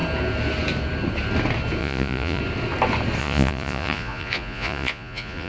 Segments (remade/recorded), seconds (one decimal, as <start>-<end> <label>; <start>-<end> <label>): 0.0-1.8 recorded; 1.8-2.4 remade; 2.4-3.2 recorded; 3.2-5.5 remade